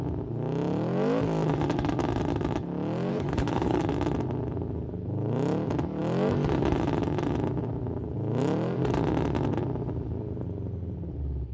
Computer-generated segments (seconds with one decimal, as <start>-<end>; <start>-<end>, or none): 3.1-3.8